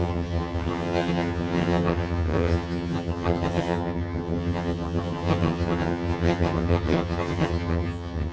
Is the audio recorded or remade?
remade